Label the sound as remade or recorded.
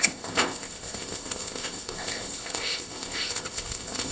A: remade